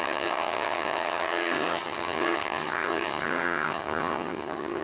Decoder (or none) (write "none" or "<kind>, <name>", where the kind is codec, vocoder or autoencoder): vocoder, HiFi-GAN